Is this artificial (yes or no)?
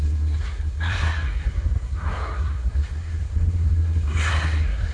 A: yes